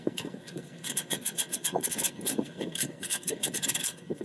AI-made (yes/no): yes